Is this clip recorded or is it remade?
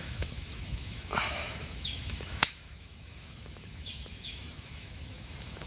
remade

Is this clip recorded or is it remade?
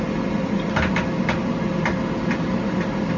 recorded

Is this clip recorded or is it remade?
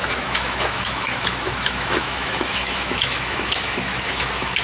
remade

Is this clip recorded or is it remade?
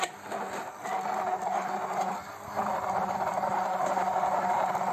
recorded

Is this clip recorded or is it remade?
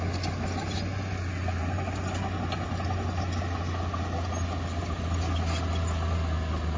recorded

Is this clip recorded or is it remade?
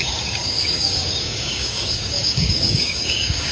remade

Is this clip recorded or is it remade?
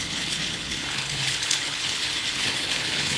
remade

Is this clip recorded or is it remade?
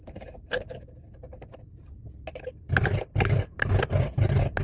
recorded